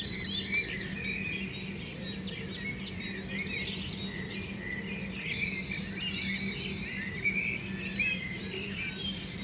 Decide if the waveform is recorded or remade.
recorded